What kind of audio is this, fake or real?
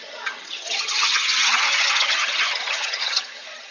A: fake